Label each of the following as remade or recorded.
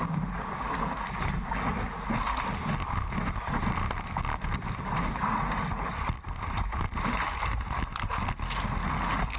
recorded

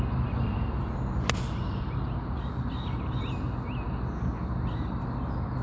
recorded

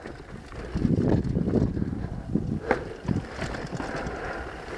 recorded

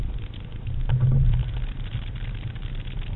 recorded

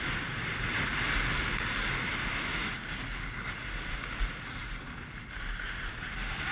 recorded